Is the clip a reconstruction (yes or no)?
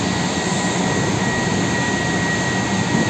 no